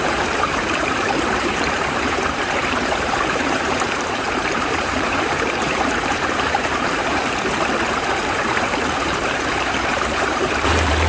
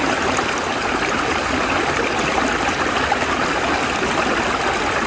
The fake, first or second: first